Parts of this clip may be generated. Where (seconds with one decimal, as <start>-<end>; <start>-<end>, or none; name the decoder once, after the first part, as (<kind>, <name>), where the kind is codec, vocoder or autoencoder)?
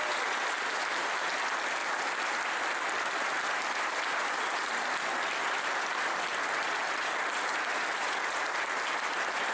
none